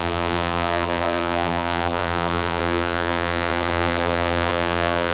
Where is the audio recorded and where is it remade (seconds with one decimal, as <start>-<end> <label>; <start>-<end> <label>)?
0.0-5.1 remade